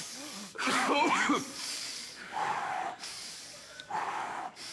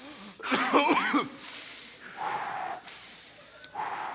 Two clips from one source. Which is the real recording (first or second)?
second